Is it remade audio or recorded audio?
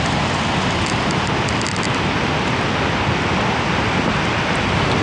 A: recorded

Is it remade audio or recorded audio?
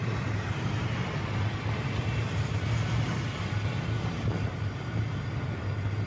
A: recorded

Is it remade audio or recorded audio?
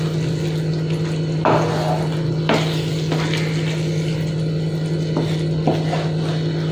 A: recorded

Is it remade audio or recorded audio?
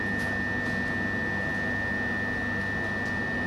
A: recorded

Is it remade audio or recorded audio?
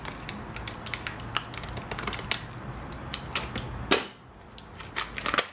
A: recorded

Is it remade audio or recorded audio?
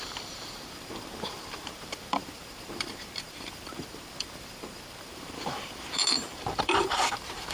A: remade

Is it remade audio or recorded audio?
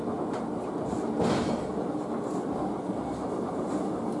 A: recorded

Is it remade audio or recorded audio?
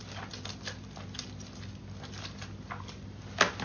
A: recorded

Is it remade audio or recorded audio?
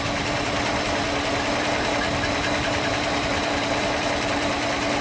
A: recorded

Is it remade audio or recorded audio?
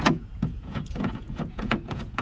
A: remade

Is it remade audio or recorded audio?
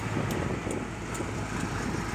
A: recorded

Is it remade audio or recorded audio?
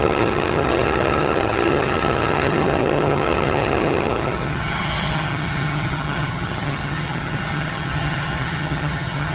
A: remade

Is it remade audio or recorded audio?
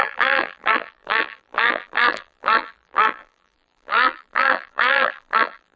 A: remade